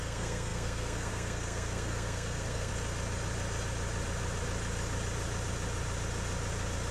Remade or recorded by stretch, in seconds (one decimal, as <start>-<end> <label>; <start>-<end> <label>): 0.0-2.7 remade; 2.7-6.9 recorded

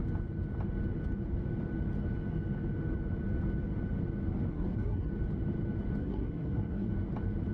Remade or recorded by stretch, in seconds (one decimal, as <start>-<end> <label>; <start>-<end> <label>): 0.0-4.5 recorded; 4.5-5.1 remade; 5.1-6.0 recorded; 6.0-6.9 remade; 6.9-7.5 recorded

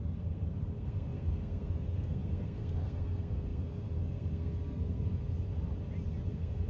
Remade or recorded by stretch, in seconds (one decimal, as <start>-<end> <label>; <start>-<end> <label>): 0.0-5.1 remade; 5.1-6.3 recorded; 6.3-6.7 remade

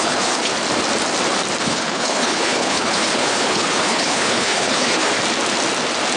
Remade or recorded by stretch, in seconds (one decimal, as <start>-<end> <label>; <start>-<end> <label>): 0.0-0.5 remade; 0.5-1.6 recorded; 1.6-5.1 remade; 5.1-6.2 recorded

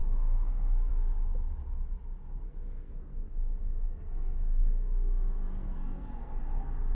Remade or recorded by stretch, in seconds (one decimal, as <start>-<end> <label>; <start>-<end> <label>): 0.0-0.9 remade; 0.9-2.3 recorded; 2.3-6.4 remade; 6.4-6.9 recorded

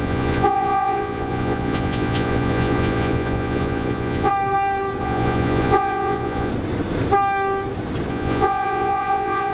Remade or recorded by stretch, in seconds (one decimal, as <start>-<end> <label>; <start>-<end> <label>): 0.0-4.3 remade; 4.3-5.0 recorded; 5.0-6.5 remade; 6.5-8.1 recorded; 8.1-9.5 remade

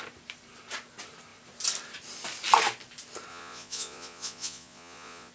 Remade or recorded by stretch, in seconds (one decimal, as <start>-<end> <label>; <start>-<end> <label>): 0.0-3.3 recorded; 3.3-5.3 remade

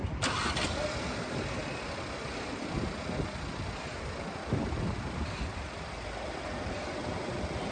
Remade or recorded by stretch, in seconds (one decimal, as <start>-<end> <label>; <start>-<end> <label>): 0.0-7.7 recorded